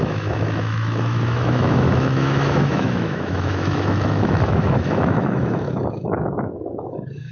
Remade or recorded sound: remade